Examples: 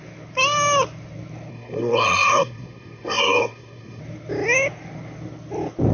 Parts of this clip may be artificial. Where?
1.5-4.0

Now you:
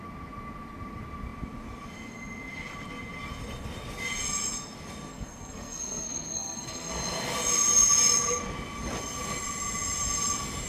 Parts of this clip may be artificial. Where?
5.1-6.9

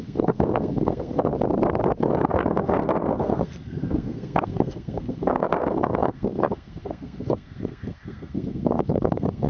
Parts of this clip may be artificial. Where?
0.0-1.3; 2.0-9.5

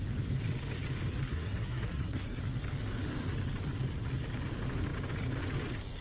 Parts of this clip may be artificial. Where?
1.3-2.4

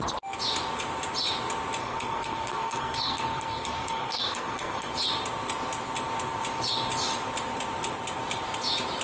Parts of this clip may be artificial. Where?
1.8-4.9

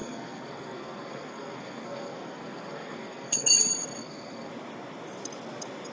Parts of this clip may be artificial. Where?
0.0-3.5; 4.0-4.5

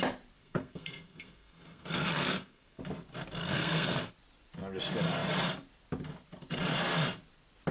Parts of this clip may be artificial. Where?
0.4-2.8; 3.4-4.1

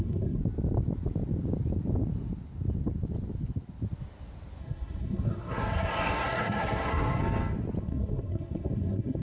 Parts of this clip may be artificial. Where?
0.0-0.4; 4.6-7.2; 7.8-9.2